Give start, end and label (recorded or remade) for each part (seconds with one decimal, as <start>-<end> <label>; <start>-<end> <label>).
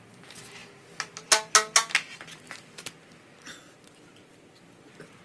0.0-5.2 recorded